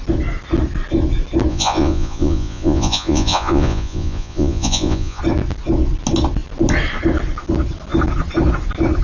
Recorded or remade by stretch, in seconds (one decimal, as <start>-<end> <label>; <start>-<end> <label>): 0.0-1.5 recorded; 1.5-5.2 remade; 5.2-9.0 recorded